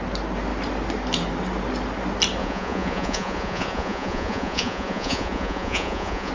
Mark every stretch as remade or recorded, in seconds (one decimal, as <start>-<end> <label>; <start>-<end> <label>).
0.0-2.4 recorded; 2.4-6.3 remade